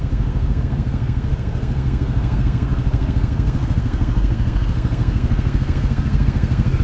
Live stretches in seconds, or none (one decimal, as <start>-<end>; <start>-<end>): none